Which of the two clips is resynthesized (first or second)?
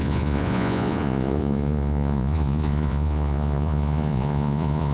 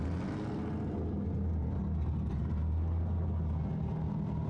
first